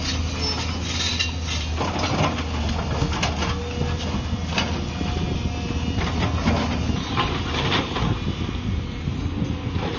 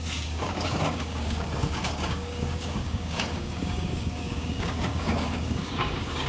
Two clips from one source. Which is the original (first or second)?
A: first